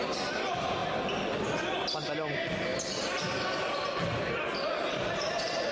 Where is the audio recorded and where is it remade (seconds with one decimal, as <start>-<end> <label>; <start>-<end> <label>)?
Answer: 0.0-0.8 remade; 0.8-1.8 recorded; 1.8-5.7 remade